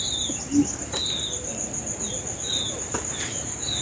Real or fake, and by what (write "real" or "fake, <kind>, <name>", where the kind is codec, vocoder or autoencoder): real